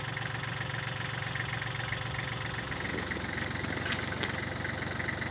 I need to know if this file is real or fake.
real